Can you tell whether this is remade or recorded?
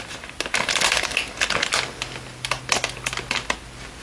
recorded